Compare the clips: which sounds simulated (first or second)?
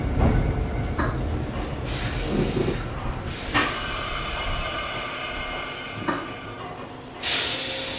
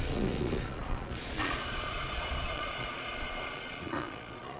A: second